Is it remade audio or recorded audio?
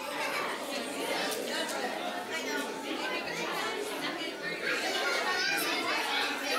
recorded